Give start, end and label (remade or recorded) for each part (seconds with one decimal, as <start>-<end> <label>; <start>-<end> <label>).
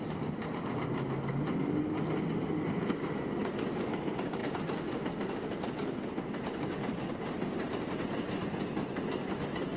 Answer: 0.0-9.8 recorded